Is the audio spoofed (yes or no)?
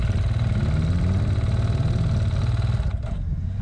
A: no